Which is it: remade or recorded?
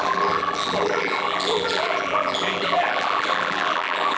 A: remade